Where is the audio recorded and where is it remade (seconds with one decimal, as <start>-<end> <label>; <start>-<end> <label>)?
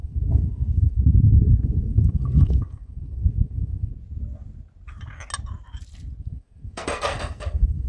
0.0-3.9 remade; 3.9-6.2 recorded; 6.2-7.9 remade